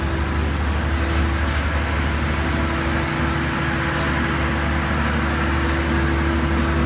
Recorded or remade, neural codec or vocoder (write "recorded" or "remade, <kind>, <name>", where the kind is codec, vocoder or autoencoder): recorded